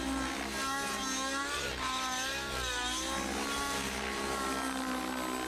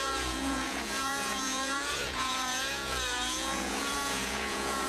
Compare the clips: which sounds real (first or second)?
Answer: first